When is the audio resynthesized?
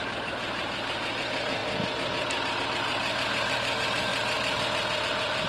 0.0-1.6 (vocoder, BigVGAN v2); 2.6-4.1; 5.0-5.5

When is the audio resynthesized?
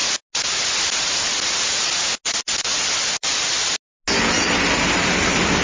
none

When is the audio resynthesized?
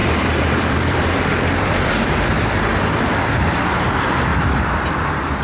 0.0-3.2 (vocoder, BigVGAN v2); 4.3-5.4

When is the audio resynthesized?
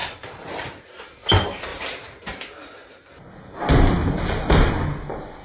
0.0-0.8 (vocoder, BigVGAN v2); 1.7-2.9; 4.0-4.7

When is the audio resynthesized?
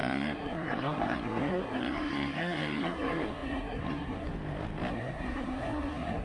0.0-4.3 (codec, SNAC); 4.9-6.2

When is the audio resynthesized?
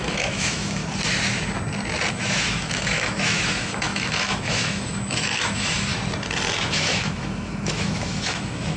0.0-0.8 (autoencoder, DAC-VAE); 2.1-5.9; 6.6-8.8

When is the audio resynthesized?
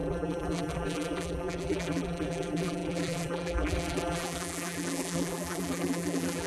0.0-6.5 (vocoder, BigVGAN v2)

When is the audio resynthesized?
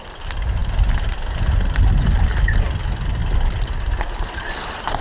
none